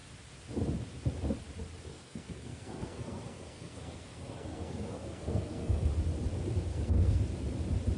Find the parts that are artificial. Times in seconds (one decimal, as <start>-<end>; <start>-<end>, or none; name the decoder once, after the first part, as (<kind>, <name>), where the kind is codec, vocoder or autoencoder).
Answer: 1.9-5.9 (codec, SNAC); 6.7-7.2